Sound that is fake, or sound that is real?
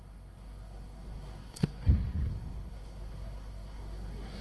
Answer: fake